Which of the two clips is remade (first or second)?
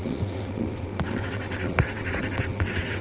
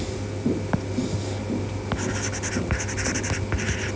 first